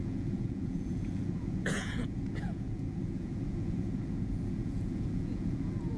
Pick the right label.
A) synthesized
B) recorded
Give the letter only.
A